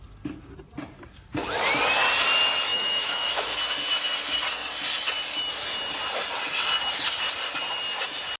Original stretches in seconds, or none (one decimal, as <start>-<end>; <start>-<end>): 0.0-2.7; 3.4-8.4